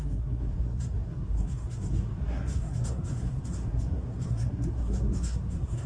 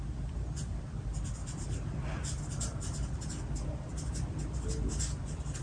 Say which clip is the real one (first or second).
second